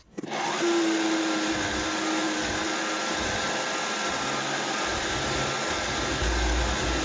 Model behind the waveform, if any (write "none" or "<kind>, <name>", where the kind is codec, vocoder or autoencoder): none